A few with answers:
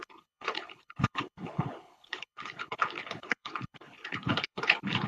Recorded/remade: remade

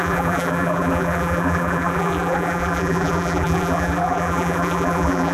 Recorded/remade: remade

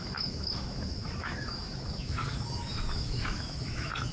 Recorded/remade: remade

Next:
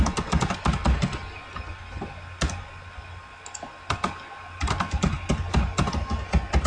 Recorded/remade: recorded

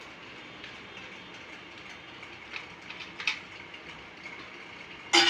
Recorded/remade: recorded